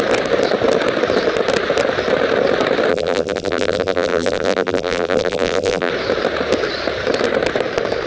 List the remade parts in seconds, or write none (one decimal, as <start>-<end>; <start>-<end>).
2.9-5.9